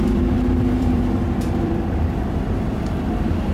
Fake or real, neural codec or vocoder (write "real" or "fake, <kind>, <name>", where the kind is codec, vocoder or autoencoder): fake, vocoder, BigVGAN v2